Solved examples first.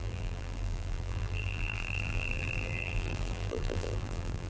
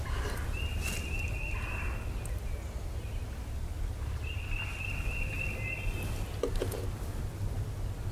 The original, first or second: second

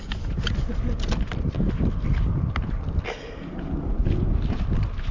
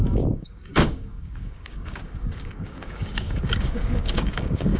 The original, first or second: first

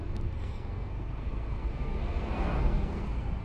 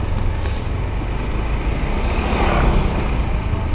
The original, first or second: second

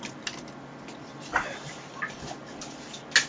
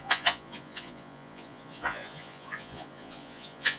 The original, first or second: first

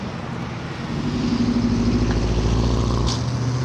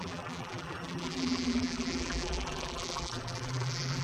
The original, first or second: first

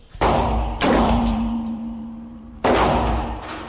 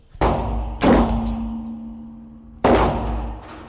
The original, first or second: second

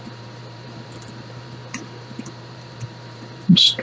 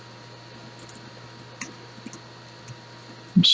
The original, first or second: second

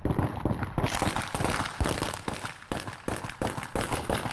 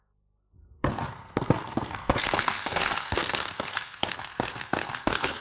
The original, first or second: first